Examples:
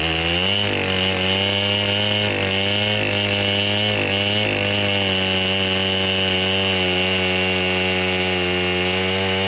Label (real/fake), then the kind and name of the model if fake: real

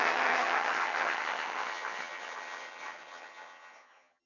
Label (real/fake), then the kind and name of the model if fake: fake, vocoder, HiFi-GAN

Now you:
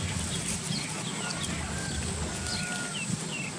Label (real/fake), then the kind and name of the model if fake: real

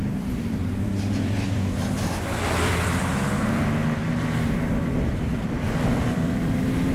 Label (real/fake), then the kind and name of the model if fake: fake, vocoder, BigVGAN v2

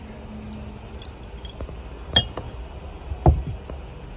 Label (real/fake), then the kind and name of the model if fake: real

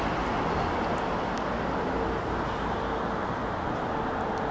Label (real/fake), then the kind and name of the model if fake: real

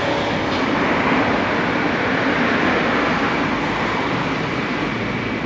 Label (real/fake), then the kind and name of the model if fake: real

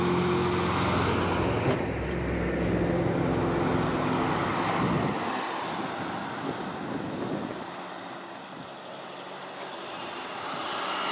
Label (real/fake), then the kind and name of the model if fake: real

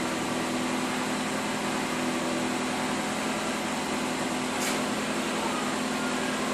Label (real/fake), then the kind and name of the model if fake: real